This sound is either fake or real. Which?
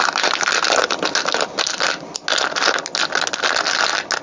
real